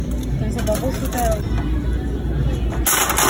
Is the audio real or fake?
real